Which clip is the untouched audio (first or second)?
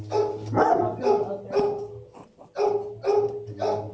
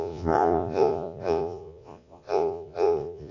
first